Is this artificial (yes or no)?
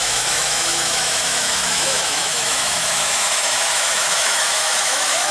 yes